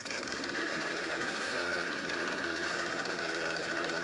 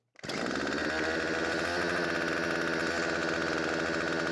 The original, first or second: second